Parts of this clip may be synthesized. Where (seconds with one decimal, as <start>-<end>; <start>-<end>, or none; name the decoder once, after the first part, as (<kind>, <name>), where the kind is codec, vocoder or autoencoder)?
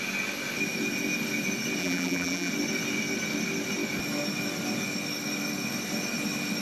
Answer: 1.8-2.5 (vocoder, BigVGAN v2)